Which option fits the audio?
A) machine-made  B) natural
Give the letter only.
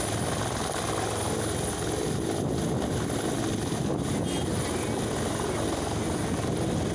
B